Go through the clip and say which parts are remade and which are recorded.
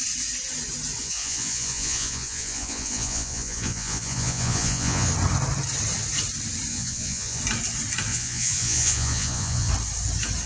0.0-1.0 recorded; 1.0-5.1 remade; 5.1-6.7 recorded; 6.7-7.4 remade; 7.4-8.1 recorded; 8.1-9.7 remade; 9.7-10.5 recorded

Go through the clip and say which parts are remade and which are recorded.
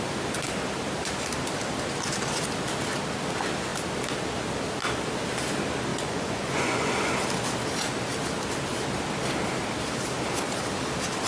0.0-5.9 recorded; 5.9-7.1 remade; 7.1-11.3 recorded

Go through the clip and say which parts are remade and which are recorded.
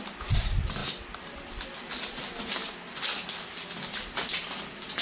0.0-5.0 recorded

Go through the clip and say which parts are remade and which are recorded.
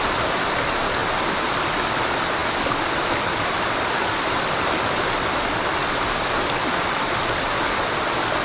0.0-8.4 recorded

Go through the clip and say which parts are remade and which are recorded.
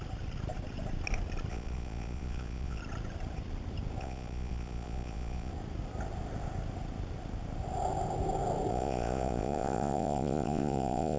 0.0-1.5 recorded; 1.5-2.8 remade; 2.8-4.0 recorded; 4.0-5.5 remade; 5.5-8.7 recorded; 8.7-11.2 remade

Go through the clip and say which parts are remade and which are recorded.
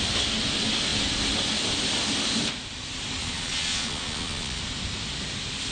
0.0-3.2 recorded; 3.2-4.6 remade; 4.6-5.7 recorded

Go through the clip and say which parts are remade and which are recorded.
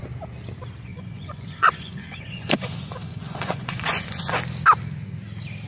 0.0-0.9 recorded; 0.9-4.3 remade; 4.3-5.7 recorded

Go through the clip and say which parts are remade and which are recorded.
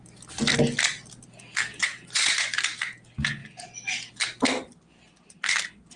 0.0-1.7 recorded; 1.7-2.6 remade; 2.6-6.0 recorded